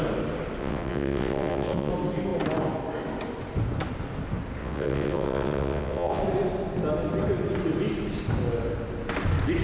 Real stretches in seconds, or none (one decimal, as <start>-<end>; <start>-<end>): 0.0-0.6; 1.9-4.6; 6.2-9.6